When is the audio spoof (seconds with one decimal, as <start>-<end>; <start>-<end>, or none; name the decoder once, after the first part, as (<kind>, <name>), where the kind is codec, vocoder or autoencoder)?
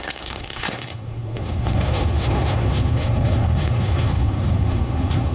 0.0-5.3 (codec, SNAC)